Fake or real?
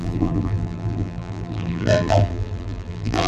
fake